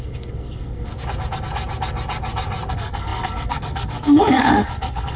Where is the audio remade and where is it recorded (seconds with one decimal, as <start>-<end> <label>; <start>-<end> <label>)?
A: 0.0-0.9 remade; 0.9-2.7 recorded; 2.7-5.2 remade